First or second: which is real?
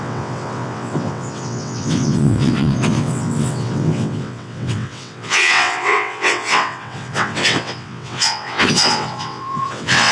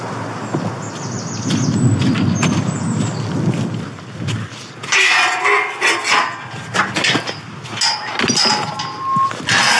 second